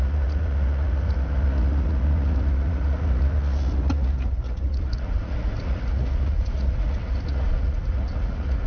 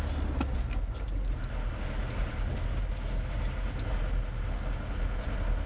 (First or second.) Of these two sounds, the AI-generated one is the first